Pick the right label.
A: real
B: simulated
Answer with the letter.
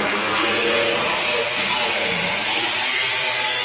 B